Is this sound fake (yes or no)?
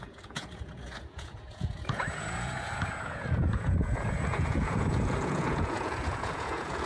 yes